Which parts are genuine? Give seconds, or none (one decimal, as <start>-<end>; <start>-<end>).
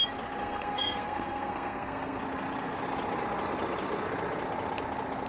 0.0-0.4; 2.2-5.3